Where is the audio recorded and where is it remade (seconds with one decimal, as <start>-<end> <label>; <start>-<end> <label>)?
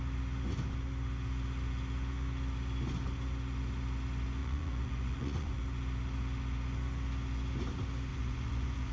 0.0-4.4 recorded; 4.4-5.6 remade; 5.6-8.1 recorded; 8.1-8.9 remade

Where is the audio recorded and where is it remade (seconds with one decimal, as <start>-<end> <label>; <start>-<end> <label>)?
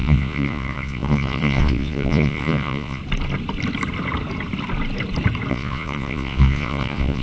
0.0-3.0 remade; 3.0-5.5 recorded; 5.5-7.2 remade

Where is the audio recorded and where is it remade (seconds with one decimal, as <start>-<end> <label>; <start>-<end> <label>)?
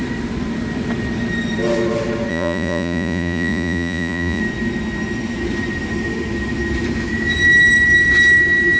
0.0-2.3 recorded; 2.3-4.4 remade; 4.4-8.8 recorded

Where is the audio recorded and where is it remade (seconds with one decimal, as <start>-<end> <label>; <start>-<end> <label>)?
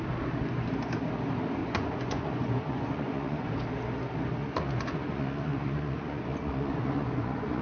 0.0-1.6 recorded; 1.6-3.5 remade; 3.5-4.4 recorded; 4.4-7.6 remade